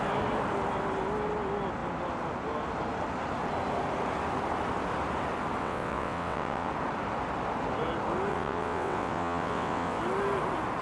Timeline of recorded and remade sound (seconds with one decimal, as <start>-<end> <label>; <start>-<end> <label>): 0.0-5.6 recorded; 5.6-6.7 remade; 6.7-8.3 recorded; 8.3-10.0 remade; 10.0-10.8 recorded